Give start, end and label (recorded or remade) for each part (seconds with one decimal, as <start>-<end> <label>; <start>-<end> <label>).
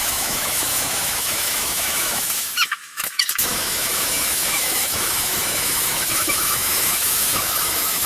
0.0-8.1 remade